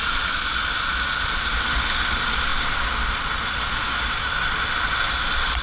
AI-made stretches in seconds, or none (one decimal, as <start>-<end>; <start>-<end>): none